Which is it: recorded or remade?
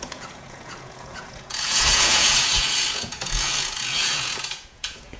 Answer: remade